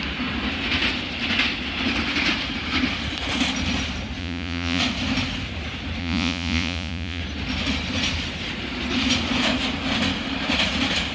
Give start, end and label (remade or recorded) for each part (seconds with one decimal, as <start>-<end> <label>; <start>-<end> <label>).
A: 0.0-4.2 recorded; 4.2-4.8 remade; 4.8-6.0 recorded; 6.0-7.2 remade; 7.2-11.1 recorded